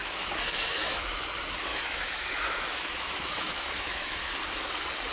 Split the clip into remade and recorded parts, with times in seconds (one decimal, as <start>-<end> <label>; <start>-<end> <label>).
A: 0.0-1.2 remade; 1.2-1.7 recorded; 1.7-4.3 remade; 4.3-5.1 recorded